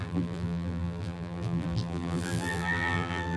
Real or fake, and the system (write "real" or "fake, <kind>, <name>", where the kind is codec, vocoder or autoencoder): fake, vocoder, BigVGAN v2